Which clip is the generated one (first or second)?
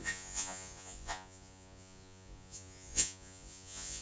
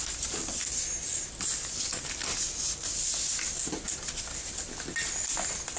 first